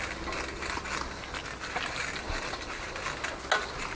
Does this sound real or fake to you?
real